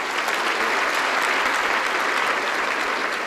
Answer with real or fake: real